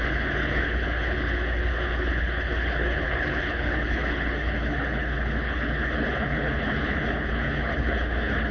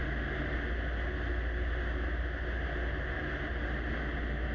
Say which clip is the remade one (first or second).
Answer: first